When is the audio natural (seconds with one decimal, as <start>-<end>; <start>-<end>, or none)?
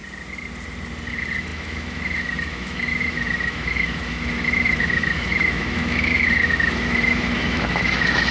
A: 0.0-1.1